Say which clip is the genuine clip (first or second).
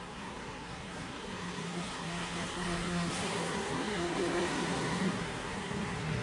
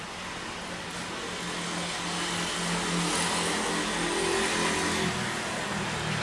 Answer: second